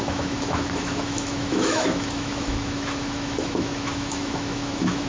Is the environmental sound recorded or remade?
remade